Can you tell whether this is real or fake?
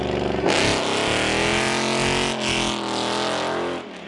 real